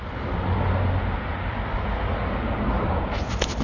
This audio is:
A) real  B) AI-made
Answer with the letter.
A